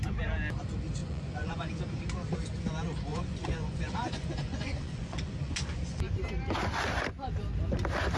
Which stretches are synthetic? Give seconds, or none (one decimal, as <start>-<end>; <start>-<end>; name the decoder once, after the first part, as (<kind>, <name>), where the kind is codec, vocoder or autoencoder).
1.0-2.0 (vocoder, Vocos); 3.1-6.0